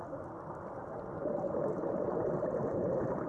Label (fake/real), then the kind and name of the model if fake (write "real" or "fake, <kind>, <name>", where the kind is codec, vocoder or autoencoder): real